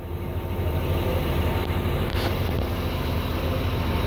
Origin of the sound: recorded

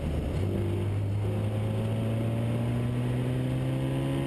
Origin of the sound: recorded